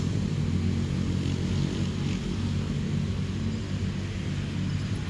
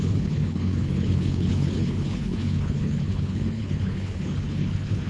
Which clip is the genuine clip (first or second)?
first